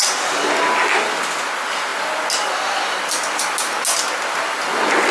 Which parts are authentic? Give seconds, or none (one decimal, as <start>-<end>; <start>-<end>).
0.0-5.1